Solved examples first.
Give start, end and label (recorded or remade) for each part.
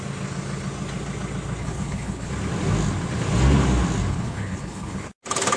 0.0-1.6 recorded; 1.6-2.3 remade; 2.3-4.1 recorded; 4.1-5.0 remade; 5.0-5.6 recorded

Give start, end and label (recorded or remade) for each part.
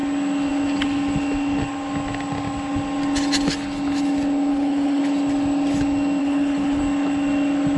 0.0-4.5 recorded; 4.5-5.0 remade; 5.0-6.2 recorded; 6.2-6.8 remade; 6.8-7.8 recorded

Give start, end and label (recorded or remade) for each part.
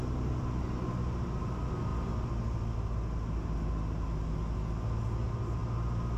0.0-6.2 recorded